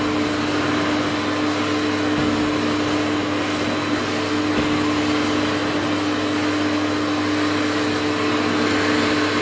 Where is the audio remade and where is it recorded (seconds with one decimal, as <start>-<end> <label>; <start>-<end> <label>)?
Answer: 0.0-9.4 recorded

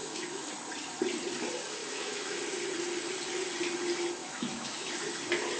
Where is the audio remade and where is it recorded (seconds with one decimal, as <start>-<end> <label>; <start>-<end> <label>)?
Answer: 0.0-0.5 remade; 0.5-1.8 recorded; 1.8-2.4 remade; 2.4-4.2 recorded; 4.2-4.9 remade; 4.9-5.6 recorded

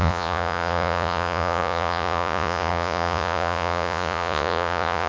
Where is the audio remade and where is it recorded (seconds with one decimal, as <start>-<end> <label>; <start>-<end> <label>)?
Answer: 0.0-5.1 remade

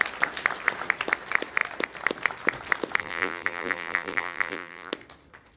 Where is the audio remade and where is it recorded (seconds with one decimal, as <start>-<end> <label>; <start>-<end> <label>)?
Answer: 0.0-3.0 recorded; 3.0-4.9 remade; 4.9-5.6 recorded

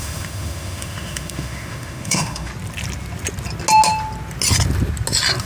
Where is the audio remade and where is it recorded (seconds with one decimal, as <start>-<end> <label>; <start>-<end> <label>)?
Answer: 0.0-2.5 remade; 2.5-5.4 recorded

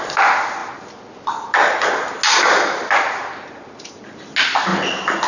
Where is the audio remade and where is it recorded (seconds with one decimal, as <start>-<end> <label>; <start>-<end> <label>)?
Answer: 0.0-5.3 recorded